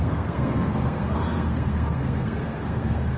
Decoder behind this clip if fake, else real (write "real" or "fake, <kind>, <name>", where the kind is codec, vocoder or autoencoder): fake, codec, SNAC